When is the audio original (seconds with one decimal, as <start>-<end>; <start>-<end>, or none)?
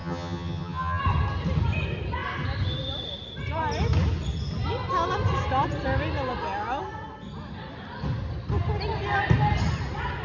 1.0-10.2